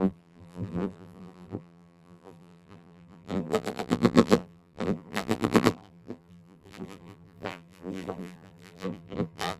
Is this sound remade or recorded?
remade